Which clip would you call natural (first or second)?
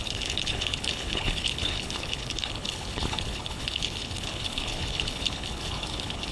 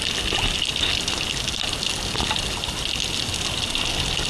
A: second